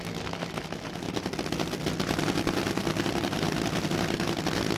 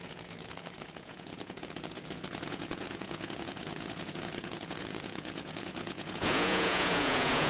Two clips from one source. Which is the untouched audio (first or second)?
first